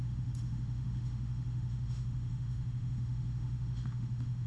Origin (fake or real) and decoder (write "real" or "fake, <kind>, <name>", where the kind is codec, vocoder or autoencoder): fake, autoencoder, DAC-VAE